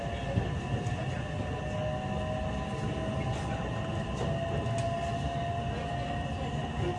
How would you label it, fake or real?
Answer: real